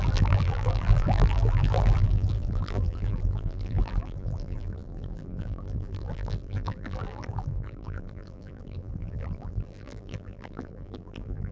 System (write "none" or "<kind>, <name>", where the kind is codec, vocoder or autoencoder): vocoder, BigVGAN v2